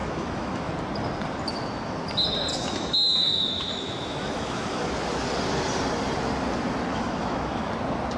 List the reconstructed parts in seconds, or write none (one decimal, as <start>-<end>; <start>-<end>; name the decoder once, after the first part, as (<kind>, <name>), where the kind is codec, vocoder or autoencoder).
0.0-0.7 (autoencoder, DAC-VAE); 2.5-4.9; 6.9-7.7

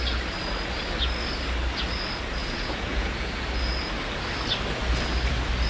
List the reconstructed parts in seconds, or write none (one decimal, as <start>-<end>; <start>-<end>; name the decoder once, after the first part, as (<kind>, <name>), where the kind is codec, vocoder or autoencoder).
2.4-3.4 (vocoder, Vocos)

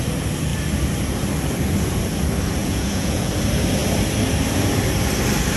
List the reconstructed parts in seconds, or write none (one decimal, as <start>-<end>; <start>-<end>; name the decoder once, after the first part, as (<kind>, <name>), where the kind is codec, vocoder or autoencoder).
2.6-3.3 (vocoder, Vocos)

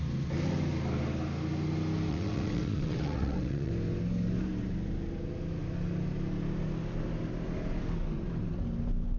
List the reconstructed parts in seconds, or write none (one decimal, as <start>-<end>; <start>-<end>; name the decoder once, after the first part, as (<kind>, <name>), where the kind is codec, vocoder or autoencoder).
2.1-3.7 (vocoder, WaveNeXt)

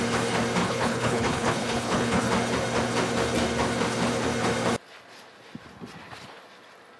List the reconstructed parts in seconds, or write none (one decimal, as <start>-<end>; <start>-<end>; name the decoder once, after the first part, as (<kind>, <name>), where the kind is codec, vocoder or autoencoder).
0.6-2.3 (codec, HILCodec)

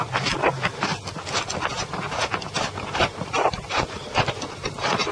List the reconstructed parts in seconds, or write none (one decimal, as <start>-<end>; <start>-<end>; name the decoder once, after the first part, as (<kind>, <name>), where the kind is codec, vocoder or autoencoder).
1.7-5.1 (vocoder, BigVGAN v2)